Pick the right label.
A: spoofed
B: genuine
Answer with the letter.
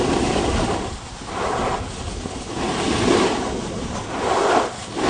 B